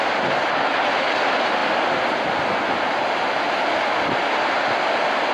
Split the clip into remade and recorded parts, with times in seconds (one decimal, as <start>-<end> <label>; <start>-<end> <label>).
0.0-5.3 recorded